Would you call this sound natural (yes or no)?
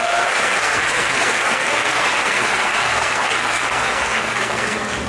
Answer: no